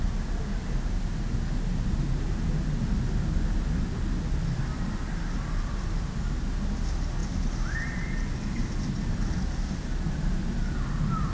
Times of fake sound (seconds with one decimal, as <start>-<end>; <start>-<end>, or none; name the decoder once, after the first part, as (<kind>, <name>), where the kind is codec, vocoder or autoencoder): none